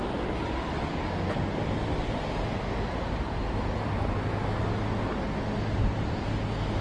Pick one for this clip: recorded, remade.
recorded